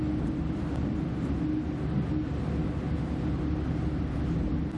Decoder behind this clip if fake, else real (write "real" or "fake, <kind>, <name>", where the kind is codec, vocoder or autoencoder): real